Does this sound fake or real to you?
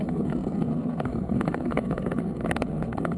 fake